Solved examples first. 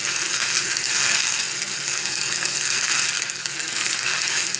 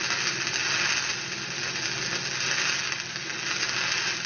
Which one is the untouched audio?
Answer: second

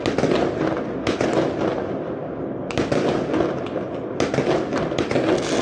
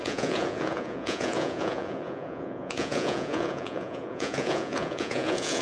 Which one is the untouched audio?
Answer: first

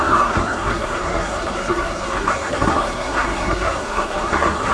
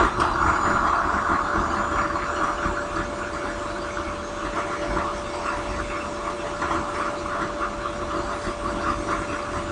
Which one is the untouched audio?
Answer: second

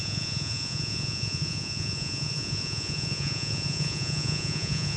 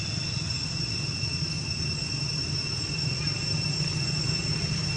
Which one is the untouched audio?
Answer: second